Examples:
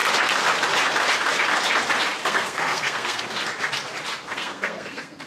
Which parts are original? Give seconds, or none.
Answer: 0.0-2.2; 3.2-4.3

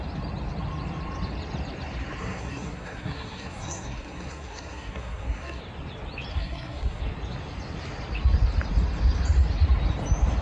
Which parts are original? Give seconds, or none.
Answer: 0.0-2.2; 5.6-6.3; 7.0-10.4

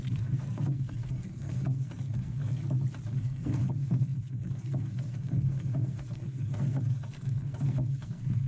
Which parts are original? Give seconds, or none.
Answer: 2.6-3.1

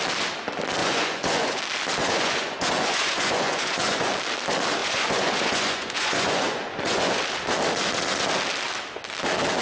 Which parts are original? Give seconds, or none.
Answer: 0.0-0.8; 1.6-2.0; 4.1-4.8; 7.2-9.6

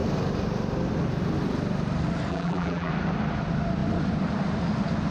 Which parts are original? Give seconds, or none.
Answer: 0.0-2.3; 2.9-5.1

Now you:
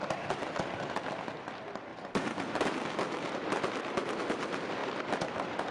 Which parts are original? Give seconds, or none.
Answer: 0.0-5.7

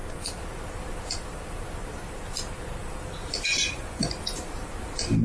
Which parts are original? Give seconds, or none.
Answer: 0.0-3.5; 4.2-5.2

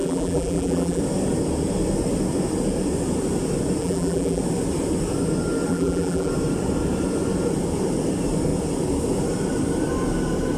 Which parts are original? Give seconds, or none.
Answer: 1.0-3.8; 4.4-5.7; 6.3-10.6